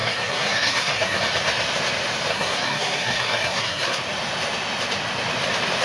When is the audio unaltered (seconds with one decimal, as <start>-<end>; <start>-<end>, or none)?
1.2-2.3; 4.0-5.8

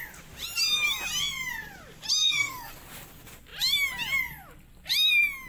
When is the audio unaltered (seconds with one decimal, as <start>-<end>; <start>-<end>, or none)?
0.0-2.2; 2.7-5.5